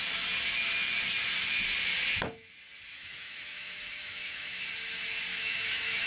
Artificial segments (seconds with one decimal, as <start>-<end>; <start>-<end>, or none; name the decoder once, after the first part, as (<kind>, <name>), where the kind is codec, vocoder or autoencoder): 2.9-4.6 (autoencoder, DAC-VAE); 5.3-6.1

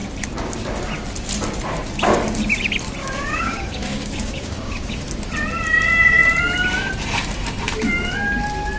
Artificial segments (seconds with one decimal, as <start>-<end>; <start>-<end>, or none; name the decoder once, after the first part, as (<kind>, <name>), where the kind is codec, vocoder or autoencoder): 3.0-5.0 (codec, DAC)

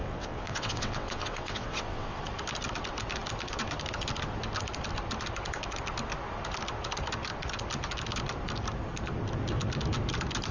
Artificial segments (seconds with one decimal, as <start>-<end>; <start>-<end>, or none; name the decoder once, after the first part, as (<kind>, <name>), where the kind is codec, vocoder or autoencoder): 0.0-2.2 (vocoder, WaveNeXt)

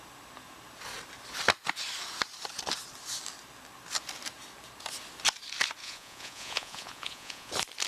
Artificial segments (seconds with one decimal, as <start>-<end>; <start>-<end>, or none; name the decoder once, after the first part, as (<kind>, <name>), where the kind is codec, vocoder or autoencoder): 5.8-7.5 (vocoder, Vocos)

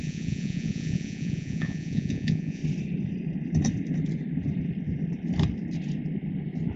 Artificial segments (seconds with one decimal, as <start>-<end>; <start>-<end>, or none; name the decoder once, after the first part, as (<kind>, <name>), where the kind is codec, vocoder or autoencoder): 0.0-2.6 (vocoder, Vocos)

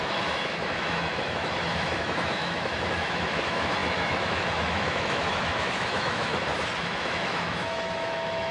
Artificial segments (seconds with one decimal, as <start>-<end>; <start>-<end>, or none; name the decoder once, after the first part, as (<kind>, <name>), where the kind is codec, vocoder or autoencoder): 0.0-6.3 (autoencoder, DAC-VAE); 6.8-8.5

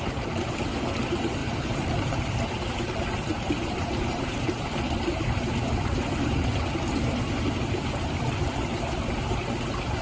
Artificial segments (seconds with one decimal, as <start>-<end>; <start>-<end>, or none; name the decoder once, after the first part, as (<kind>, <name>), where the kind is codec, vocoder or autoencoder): 1.4-2.1 (vocoder, BigVGAN v2); 3.3-4.4

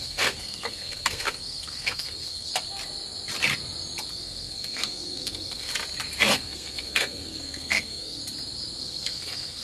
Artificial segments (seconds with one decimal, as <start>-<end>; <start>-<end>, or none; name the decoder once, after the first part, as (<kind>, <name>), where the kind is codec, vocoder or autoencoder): 0.0-2.5 (codec, SNAC); 4.1-5.7; 6.3-8.2; 8.8-9.6